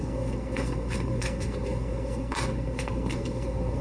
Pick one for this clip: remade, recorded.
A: remade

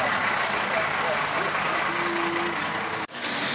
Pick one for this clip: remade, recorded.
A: recorded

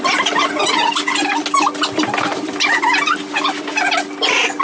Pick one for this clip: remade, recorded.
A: recorded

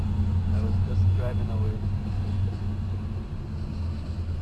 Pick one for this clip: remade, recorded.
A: recorded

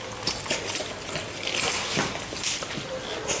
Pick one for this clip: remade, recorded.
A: recorded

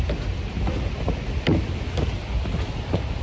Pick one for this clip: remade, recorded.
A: recorded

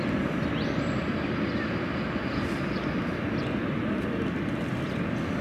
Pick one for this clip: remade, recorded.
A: recorded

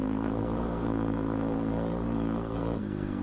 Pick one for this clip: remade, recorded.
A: remade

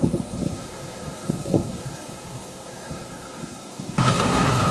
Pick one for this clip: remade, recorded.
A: remade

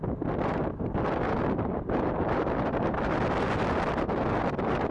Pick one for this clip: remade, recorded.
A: recorded